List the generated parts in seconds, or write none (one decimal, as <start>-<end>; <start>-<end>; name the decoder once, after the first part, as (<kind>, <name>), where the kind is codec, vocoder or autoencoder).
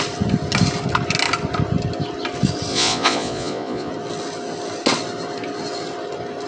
2.7-3.9 (vocoder, Vocos)